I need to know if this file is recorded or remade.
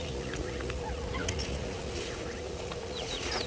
remade